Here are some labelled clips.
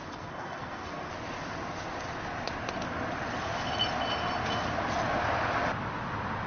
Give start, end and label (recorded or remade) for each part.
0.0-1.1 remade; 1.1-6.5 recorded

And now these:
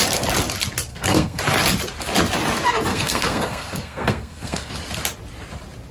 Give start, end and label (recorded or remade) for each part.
0.0-0.9 recorded; 0.9-1.4 remade; 1.4-2.9 recorded; 2.9-4.7 remade; 4.7-5.9 recorded

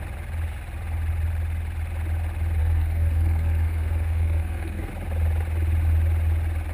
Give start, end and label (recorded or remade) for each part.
0.0-2.6 recorded; 2.6-4.9 remade; 4.9-6.7 recorded

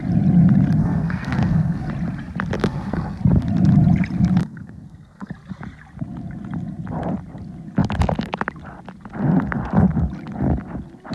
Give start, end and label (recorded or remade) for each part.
0.0-0.8 recorded; 0.8-1.9 remade; 1.9-2.6 recorded; 2.6-3.2 remade; 3.2-4.4 recorded; 4.4-5.3 remade; 5.3-11.1 recorded

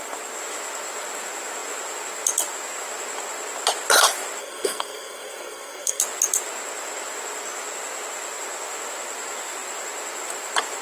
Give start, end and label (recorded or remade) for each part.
0.0-4.4 recorded; 4.4-6.0 remade; 6.0-10.8 recorded